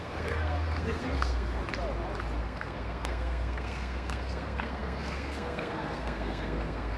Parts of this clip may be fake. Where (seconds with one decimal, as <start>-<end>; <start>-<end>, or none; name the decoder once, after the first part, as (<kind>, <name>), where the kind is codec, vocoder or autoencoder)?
0.0-1.6 (codec, SNAC); 2.4-7.0